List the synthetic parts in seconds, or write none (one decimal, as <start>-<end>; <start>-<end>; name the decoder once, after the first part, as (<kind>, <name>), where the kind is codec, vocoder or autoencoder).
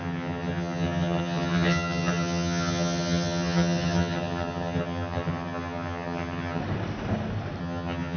0.0-6.6 (vocoder, HiFi-GAN); 7.6-8.2